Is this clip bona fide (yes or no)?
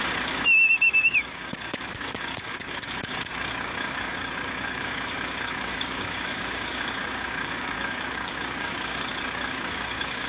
no